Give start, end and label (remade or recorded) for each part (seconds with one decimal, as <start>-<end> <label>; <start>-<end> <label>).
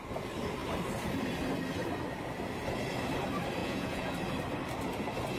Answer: 0.0-3.6 recorded; 3.6-4.1 remade; 4.1-5.4 recorded